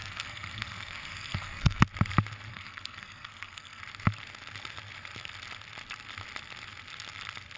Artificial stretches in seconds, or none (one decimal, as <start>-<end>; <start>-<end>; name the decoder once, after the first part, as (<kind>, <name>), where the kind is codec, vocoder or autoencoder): 0.0-1.8 (codec, SNAC); 2.5-3.8